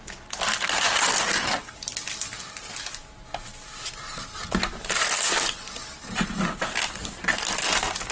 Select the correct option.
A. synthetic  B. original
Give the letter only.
B